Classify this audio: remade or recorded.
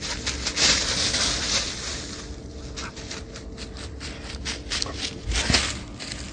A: recorded